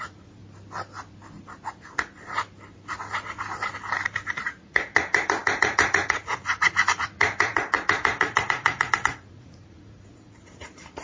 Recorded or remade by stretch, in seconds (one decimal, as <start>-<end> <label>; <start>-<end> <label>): 0.0-0.4 remade; 0.4-4.3 recorded; 4.3-11.0 remade